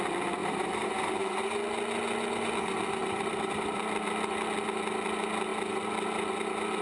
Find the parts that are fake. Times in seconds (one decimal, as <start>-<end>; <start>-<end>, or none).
0.4-1.4; 3.0-3.8

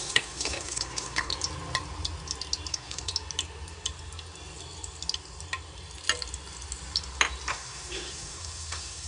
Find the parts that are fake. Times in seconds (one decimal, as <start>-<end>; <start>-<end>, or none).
0.0-1.3; 2.7-3.1; 7.5-9.1